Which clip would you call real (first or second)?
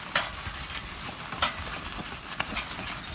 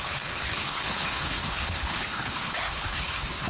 first